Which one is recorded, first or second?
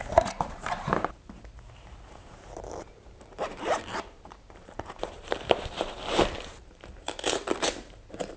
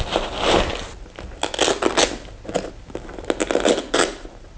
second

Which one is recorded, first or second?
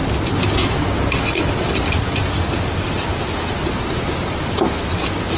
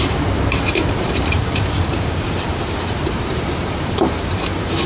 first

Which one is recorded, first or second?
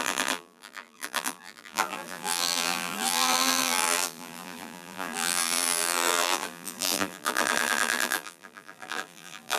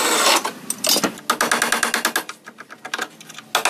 second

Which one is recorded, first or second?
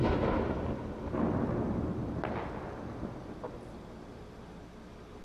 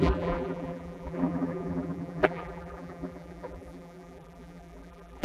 first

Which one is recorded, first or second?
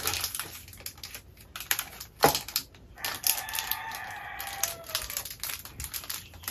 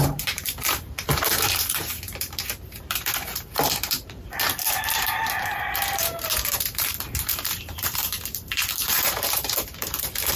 first